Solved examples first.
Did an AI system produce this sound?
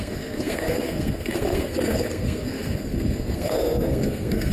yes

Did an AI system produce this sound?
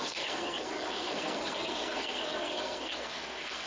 yes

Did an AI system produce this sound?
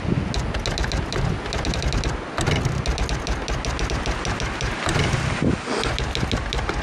no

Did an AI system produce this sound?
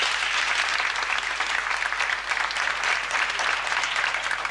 no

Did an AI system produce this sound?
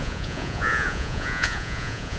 yes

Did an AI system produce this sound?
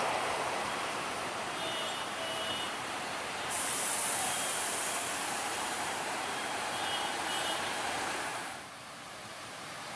yes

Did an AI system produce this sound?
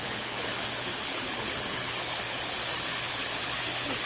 yes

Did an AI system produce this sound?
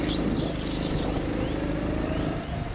no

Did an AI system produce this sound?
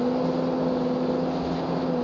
no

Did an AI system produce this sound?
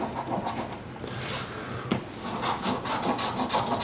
no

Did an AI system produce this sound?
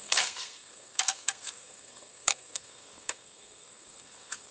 yes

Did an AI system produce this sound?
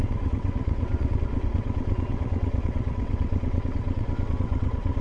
yes